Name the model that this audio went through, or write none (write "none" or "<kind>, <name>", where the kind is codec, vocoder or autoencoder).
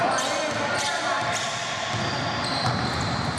none